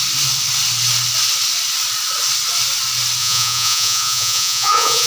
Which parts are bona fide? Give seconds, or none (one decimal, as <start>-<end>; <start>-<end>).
0.0-3.2